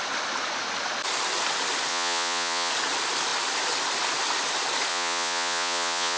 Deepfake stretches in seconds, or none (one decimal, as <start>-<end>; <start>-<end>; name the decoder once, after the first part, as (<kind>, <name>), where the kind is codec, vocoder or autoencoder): 1.9-2.7 (vocoder, Vocos); 4.9-6.2